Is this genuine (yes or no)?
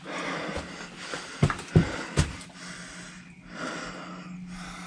yes